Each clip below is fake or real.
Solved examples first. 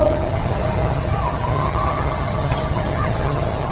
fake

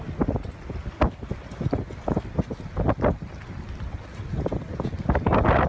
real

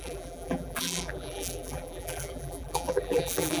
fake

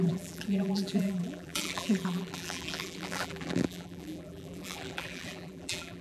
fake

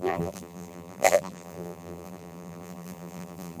fake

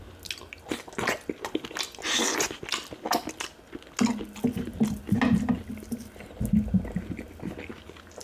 real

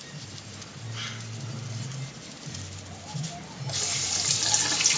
real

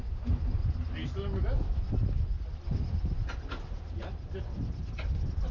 real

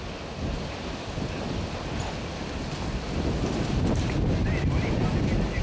real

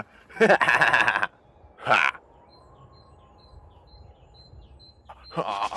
real